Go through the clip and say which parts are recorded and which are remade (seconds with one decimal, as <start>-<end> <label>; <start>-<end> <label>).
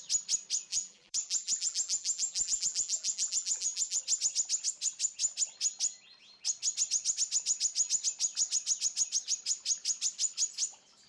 0.0-0.7 recorded; 0.7-4.0 remade; 4.0-11.1 recorded